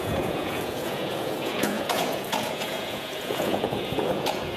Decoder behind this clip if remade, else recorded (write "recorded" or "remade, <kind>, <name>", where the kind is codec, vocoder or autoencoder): remade, vocoder, Vocos